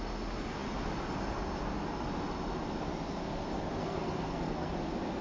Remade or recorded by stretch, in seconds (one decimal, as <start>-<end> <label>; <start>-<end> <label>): 0.0-3.8 recorded; 3.8-4.7 remade; 4.7-5.2 recorded